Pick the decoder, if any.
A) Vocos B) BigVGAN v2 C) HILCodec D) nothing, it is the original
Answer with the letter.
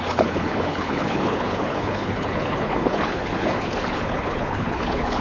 C